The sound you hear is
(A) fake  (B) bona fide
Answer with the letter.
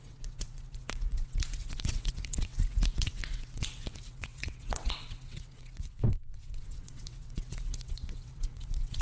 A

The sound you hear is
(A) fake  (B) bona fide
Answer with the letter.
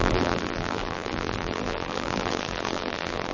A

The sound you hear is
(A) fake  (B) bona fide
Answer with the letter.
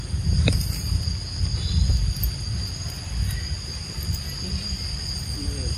B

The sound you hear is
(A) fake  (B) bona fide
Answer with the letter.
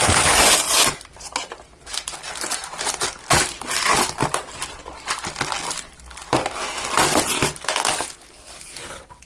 B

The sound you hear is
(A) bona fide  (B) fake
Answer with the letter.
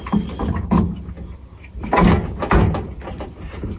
A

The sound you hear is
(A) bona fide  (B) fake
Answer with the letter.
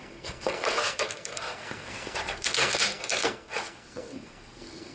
B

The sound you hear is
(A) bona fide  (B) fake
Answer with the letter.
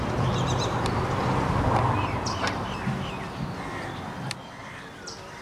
A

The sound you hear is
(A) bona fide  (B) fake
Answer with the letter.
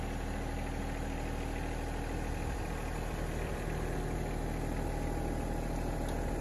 A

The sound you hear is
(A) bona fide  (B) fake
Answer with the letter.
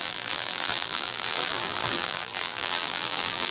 B